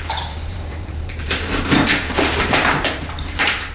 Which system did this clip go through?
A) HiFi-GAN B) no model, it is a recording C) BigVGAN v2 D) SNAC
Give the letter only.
C